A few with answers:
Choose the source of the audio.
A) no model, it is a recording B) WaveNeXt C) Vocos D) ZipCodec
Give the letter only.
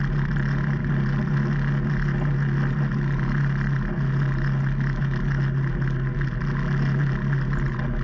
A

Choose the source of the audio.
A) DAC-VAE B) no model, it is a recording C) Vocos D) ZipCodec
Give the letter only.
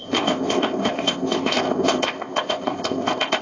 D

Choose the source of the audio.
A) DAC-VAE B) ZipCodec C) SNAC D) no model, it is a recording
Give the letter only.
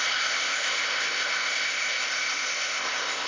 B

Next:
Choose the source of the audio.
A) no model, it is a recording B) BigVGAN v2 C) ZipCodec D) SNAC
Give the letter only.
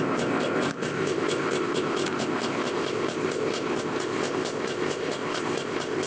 C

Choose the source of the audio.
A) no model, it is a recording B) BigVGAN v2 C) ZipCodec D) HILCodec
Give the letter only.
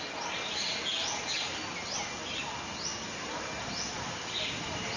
A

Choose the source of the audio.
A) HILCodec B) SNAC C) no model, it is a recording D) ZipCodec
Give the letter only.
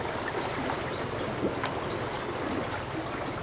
C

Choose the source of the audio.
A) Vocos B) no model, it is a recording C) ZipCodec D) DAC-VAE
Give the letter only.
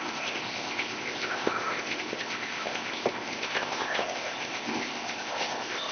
C